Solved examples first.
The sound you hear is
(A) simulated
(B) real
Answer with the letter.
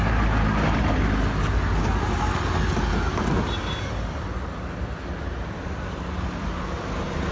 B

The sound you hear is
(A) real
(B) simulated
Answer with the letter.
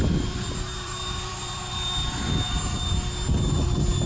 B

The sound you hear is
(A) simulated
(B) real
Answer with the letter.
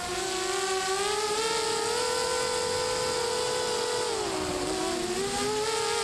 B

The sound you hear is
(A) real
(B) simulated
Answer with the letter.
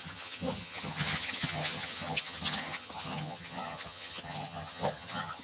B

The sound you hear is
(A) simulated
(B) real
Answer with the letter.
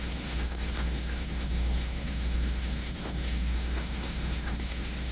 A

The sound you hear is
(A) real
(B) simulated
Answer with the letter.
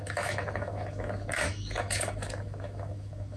B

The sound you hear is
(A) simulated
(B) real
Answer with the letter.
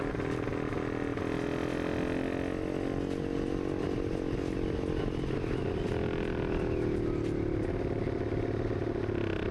B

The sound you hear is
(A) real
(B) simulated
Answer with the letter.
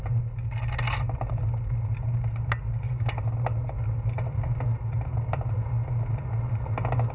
A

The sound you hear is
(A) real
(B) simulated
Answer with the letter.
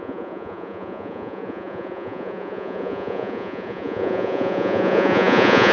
B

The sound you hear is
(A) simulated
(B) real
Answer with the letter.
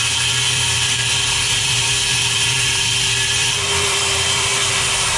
A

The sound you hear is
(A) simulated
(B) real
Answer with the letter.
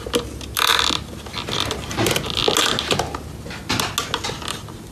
B